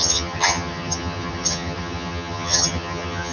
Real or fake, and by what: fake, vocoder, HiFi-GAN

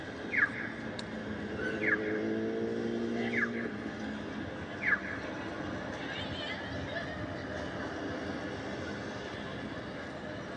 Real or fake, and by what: real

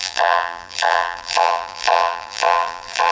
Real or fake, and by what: fake, vocoder, BigVGAN v2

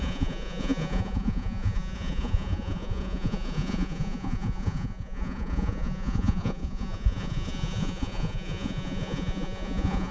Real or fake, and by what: fake, vocoder, Vocos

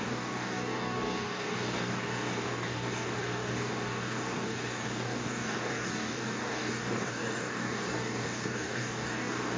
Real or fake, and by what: fake, codec, DAC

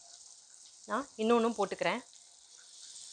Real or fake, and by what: real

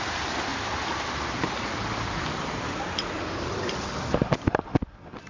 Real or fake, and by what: real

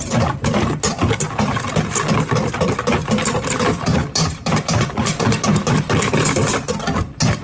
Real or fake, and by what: real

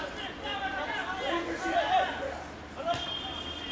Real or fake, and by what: real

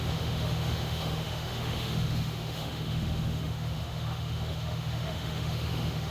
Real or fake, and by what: fake, autoencoder, DAC-VAE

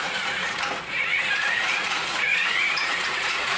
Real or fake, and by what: fake, vocoder, Vocos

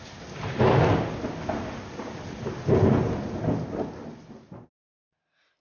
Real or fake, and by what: real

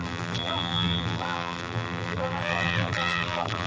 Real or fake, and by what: fake, vocoder, BigVGAN v2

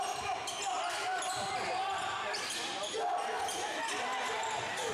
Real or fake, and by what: real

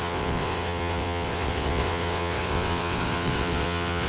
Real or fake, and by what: fake, vocoder, WaveNeXt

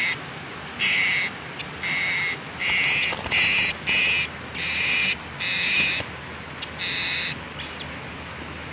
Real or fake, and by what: real